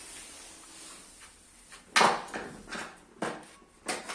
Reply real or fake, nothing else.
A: real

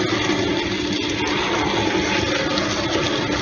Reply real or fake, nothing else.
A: real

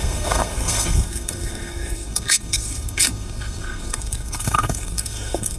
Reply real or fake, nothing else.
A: fake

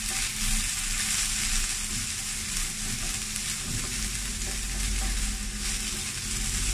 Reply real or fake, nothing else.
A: real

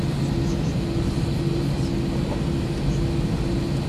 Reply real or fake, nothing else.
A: real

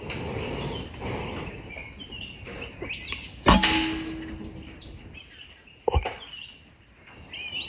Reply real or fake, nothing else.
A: real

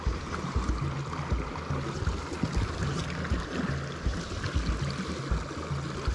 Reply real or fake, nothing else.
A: real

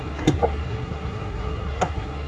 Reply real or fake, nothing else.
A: fake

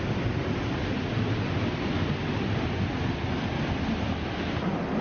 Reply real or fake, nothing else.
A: real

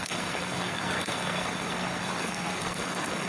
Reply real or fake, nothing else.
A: fake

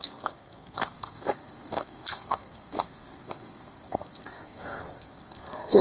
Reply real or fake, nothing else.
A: fake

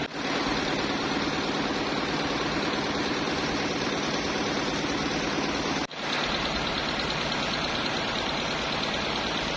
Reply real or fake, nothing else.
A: real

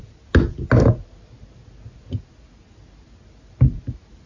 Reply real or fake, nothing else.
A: real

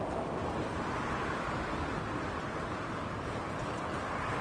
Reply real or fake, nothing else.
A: real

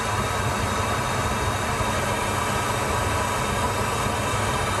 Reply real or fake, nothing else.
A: real